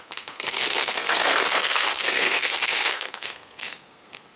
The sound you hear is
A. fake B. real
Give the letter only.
A